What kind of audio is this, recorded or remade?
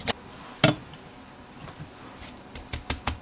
recorded